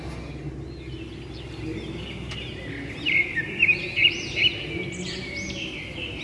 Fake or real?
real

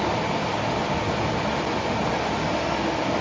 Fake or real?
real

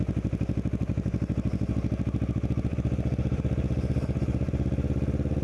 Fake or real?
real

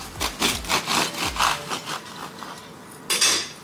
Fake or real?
real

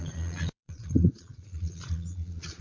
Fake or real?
fake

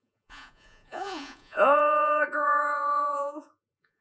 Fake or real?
fake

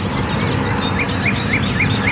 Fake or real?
real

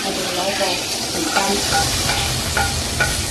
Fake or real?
real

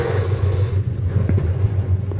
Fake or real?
fake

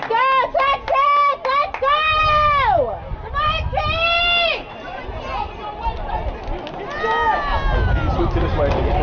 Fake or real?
real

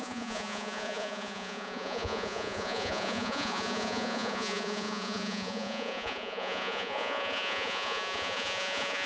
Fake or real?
fake